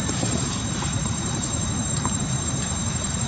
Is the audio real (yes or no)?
no